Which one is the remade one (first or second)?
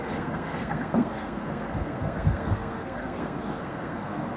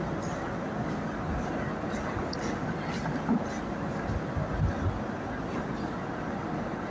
first